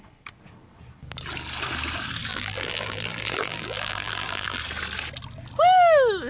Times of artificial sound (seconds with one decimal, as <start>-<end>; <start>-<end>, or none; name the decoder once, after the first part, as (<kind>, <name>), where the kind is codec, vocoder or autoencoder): 2.3-4.6 (vocoder, BigVGAN v2)